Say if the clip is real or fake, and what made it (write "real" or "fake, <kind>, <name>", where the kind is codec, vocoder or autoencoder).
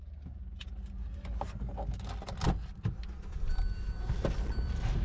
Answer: real